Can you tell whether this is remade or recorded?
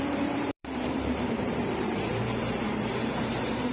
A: remade